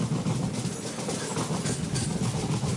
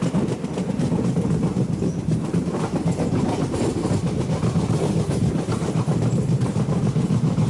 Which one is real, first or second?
first